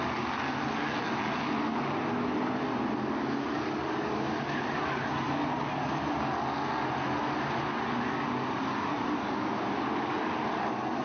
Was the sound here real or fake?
real